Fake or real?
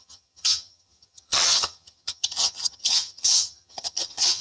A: fake